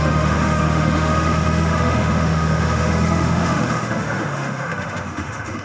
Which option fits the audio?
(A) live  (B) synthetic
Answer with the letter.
B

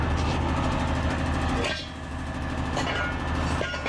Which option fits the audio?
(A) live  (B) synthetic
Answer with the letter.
A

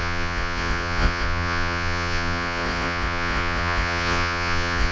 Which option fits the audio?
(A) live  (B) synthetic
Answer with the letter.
B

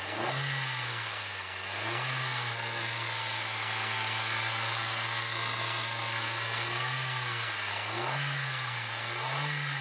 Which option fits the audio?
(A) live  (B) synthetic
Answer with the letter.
B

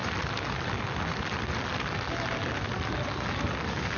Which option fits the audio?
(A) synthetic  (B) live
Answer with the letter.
B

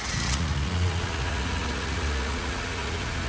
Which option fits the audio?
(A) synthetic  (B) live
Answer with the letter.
A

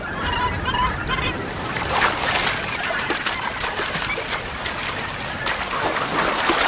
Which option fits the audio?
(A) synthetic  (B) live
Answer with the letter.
B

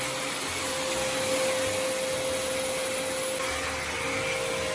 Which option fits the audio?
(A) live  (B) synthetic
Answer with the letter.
A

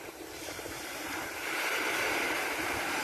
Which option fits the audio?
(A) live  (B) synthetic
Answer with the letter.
B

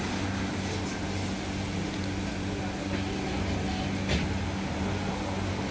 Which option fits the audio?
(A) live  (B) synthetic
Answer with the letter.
A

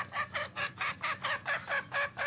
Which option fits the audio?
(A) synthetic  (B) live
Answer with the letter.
B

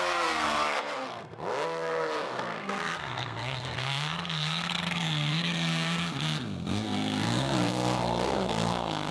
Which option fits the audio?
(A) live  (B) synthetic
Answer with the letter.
B